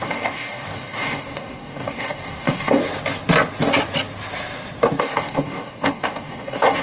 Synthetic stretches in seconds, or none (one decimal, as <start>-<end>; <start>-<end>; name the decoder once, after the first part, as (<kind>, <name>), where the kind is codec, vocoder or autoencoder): 0.0-2.8 (codec, DAC); 5.0-6.8